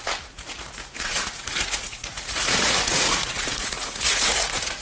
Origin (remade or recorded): remade